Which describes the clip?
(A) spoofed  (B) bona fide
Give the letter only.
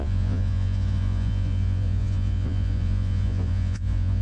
A